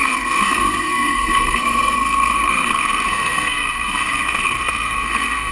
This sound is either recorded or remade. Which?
remade